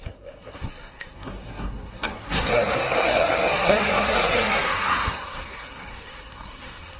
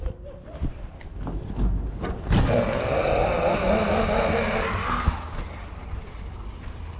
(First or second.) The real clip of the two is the second